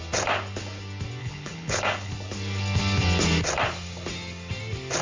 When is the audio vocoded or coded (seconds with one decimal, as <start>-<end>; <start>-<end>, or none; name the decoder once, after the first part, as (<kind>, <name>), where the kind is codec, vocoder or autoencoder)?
1.2-2.1 (codec, HILCodec)